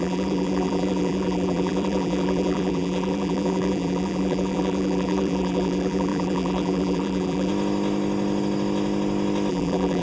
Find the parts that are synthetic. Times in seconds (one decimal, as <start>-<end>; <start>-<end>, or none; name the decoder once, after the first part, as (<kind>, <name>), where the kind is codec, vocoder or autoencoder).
0.0-7.5 (vocoder, BigVGAN v2); 9.5-10.0